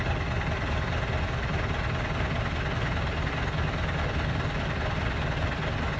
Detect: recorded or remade recorded